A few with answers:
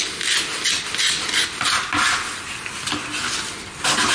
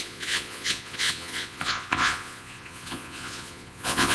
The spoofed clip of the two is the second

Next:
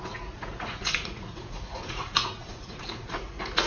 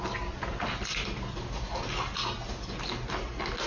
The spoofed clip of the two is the first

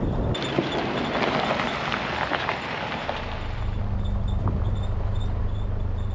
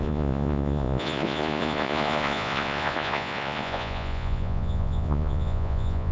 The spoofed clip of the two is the second